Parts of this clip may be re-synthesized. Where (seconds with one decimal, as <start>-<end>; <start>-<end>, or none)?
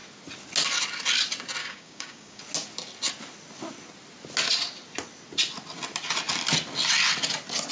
1.6-2.4